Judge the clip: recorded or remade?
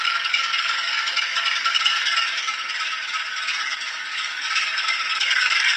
remade